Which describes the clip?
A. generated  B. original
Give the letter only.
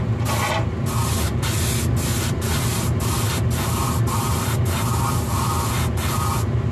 B